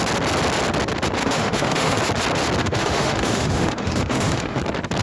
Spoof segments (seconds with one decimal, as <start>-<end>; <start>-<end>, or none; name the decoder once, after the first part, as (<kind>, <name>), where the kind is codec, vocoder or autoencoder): 1.2-2.0 (autoencoder, DAC-VAE); 2.6-4.6